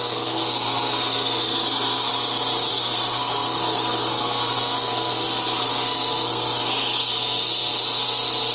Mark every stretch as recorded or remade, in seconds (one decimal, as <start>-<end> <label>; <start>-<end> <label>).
0.0-2.1 remade; 2.1-2.7 recorded; 2.7-7.7 remade; 7.7-8.5 recorded